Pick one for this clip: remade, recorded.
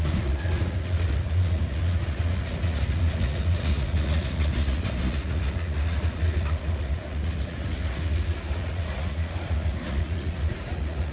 remade